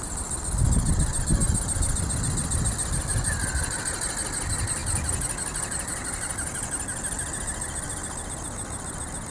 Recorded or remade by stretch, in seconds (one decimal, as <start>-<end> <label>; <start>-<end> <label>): 0.0-9.3 recorded